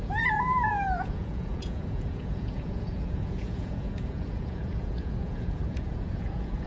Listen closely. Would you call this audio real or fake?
fake